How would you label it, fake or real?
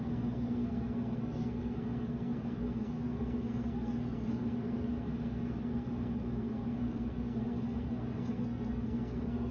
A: fake